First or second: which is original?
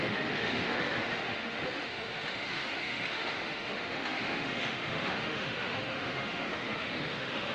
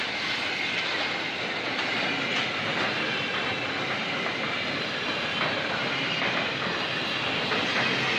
second